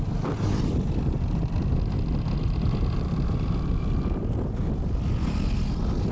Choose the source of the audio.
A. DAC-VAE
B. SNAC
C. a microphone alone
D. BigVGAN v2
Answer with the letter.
C